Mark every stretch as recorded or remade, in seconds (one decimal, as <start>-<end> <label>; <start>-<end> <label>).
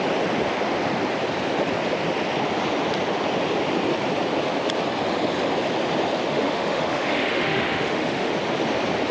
0.0-6.3 recorded; 6.3-8.3 remade; 8.3-9.1 recorded